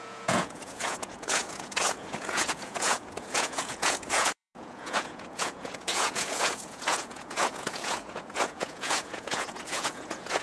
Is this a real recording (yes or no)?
no